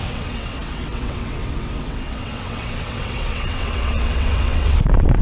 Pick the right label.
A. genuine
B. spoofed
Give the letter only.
B